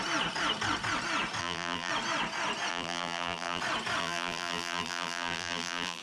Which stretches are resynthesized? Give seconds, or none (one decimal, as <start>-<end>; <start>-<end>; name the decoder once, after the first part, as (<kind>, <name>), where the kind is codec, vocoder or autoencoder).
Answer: 1.4-1.9 (vocoder, BigVGAN v2); 2.7-3.6; 4.0-6.0